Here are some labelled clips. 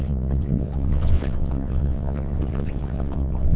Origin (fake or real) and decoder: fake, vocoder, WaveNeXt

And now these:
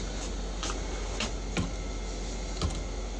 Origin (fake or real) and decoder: real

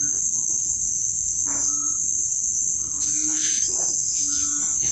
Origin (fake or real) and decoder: fake, codec, SNAC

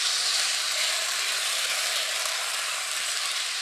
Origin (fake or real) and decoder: fake, vocoder, BigVGAN v2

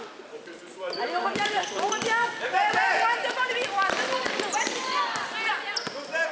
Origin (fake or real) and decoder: real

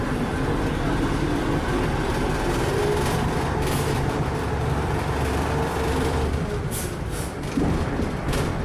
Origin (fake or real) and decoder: fake, vocoder, BigVGAN v2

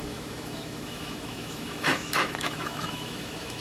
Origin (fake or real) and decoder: fake, autoencoder, DAC-VAE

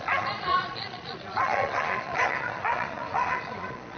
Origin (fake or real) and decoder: fake, vocoder, Vocos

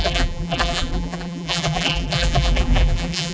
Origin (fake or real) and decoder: fake, vocoder, BigVGAN v2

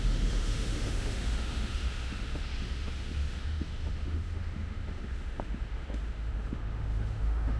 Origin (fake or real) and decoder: fake, autoencoder, DAC-VAE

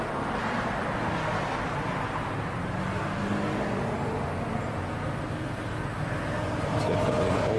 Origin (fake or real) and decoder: real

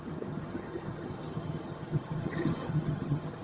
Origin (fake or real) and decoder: fake, vocoder, HiFi-GAN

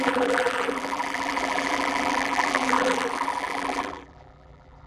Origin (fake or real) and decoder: fake, vocoder, BigVGAN v2